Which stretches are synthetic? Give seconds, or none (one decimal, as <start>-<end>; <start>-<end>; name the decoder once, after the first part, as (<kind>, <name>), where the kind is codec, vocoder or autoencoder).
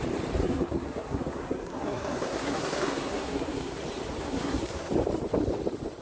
0.4-3.8 (codec, SNAC); 4.2-4.9